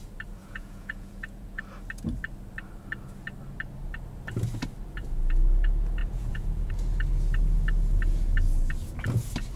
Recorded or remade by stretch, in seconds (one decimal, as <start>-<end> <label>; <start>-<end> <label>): 0.0-0.4 recorded; 0.4-1.6 remade; 1.6-6.0 recorded; 6.0-6.7 remade; 6.7-9.6 recorded